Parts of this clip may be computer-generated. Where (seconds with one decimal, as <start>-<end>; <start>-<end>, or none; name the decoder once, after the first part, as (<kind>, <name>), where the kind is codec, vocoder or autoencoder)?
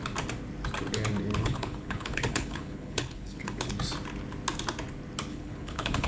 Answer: 1.3-3.7 (codec, HILCodec); 5.3-6.1